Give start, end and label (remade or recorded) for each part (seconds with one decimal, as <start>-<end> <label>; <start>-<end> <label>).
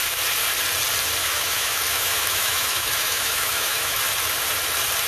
0.0-1.2 recorded; 1.2-4.0 remade; 4.0-5.1 recorded